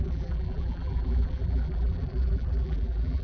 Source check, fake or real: fake